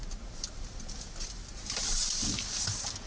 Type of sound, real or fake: real